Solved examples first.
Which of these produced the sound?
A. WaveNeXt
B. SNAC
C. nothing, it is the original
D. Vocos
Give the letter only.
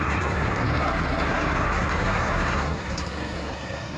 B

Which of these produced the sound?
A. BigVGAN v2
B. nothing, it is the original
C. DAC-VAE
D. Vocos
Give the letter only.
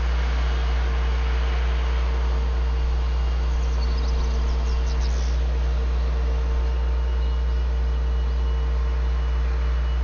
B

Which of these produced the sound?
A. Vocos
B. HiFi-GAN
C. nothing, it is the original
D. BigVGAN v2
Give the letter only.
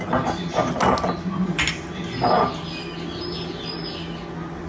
C